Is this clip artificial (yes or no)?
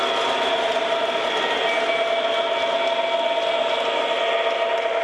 no